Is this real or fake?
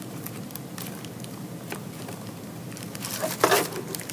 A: real